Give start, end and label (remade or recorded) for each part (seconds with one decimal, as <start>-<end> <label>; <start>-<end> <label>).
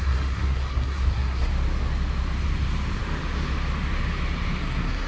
0.0-1.5 remade; 1.5-4.6 recorded; 4.6-5.1 remade